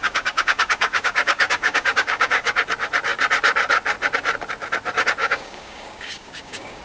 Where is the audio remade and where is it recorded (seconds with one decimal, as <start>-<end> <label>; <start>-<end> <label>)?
0.0-2.6 remade; 2.6-5.2 recorded; 5.2-6.8 remade

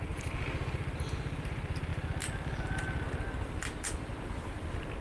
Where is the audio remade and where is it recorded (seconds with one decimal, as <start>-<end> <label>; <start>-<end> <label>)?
0.0-5.0 recorded